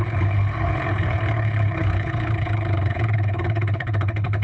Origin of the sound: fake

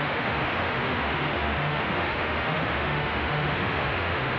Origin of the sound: fake